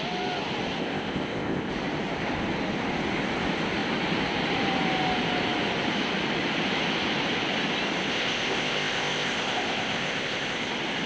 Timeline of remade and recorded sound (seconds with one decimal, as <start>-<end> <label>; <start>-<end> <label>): 0.0-0.8 recorded; 0.8-1.7 remade; 1.7-8.1 recorded; 8.1-10.7 remade; 10.7-11.1 recorded